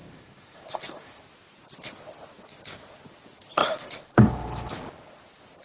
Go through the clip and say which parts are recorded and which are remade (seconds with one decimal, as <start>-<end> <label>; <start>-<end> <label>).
0.0-1.2 remade; 1.2-3.6 recorded; 3.6-4.7 remade; 4.7-5.6 recorded